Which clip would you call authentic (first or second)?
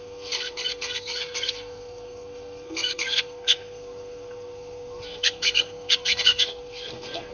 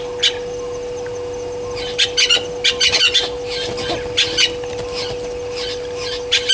second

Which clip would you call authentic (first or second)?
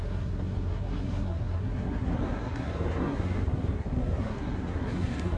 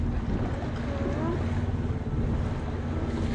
second